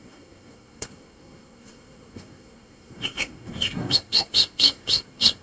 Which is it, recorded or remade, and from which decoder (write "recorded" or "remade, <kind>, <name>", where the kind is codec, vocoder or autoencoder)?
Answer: remade, codec, SNAC